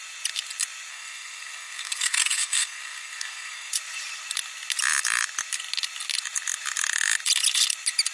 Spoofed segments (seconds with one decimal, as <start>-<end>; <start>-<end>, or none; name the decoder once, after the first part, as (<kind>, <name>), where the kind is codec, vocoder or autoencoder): 0.9-3.7 (codec, SNAC)